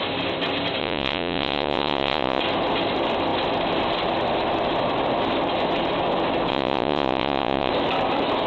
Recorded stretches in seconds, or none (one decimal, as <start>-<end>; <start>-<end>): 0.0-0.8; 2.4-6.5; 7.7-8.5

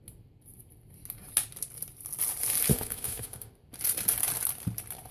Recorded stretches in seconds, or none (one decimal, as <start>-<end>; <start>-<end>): 0.0-2.7; 3.5-5.1

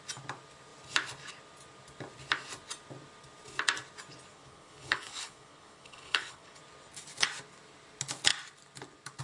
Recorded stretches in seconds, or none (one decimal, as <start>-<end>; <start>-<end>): 0.0-4.3; 6.6-9.2